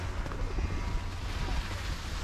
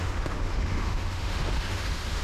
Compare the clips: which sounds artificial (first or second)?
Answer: second